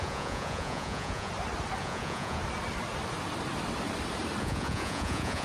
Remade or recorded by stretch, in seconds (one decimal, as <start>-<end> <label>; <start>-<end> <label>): 0.0-1.3 remade; 1.3-1.8 recorded; 1.8-2.4 remade; 2.4-4.4 recorded; 4.4-5.4 remade